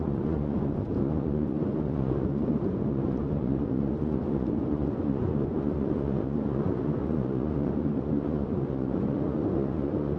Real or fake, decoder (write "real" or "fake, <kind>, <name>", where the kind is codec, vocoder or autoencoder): fake, vocoder, Vocos